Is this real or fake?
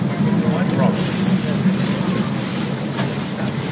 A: real